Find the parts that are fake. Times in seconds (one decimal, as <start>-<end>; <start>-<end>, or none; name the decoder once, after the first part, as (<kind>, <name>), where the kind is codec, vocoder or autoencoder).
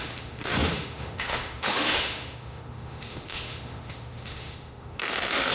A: 0.0-5.5 (autoencoder, DAC-VAE)